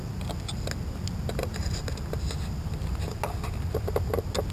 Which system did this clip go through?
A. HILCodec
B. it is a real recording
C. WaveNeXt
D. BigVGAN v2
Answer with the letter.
B